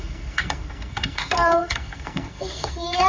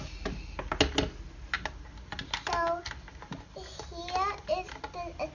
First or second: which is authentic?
second